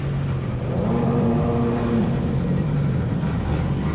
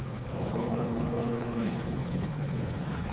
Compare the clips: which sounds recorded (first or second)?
first